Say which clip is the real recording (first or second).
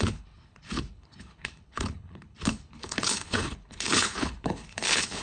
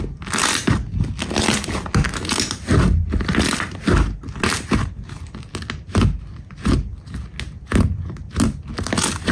second